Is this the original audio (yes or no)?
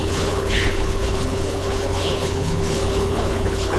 no